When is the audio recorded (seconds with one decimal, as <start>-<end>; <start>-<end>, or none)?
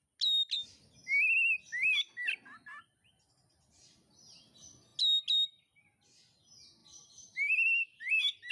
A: 0.0-8.5